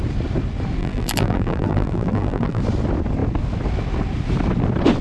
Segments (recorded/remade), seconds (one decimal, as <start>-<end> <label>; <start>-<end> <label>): 0.0-0.8 recorded; 0.8-2.6 remade; 2.6-5.0 recorded